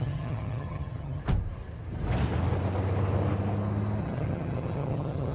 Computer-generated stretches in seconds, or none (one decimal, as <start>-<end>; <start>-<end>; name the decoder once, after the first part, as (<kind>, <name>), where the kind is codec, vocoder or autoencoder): 0.0-1.2 (vocoder, HiFi-GAN); 4.0-5.3